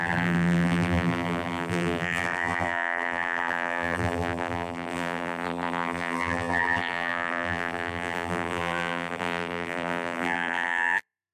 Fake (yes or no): yes